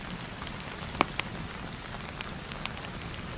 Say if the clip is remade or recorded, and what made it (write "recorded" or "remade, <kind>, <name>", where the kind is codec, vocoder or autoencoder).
recorded